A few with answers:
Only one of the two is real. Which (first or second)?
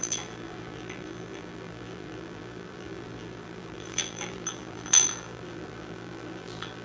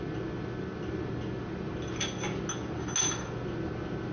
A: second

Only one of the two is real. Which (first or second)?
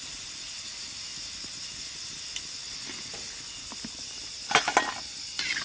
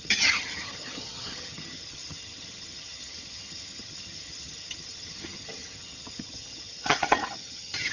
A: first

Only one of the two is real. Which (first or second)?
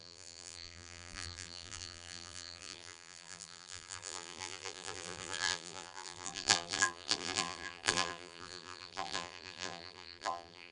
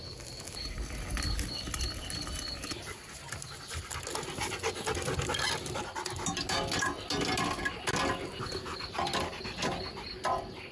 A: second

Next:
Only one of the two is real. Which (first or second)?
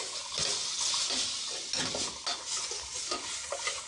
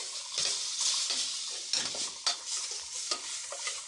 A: first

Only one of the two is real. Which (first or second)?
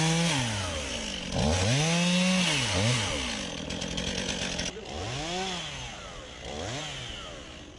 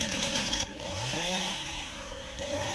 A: first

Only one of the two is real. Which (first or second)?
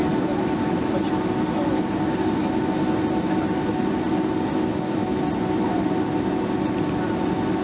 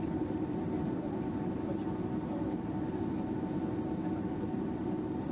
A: first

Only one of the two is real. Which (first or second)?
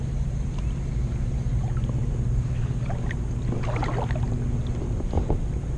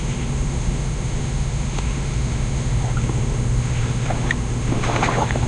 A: first